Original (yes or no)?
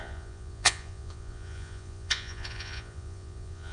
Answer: no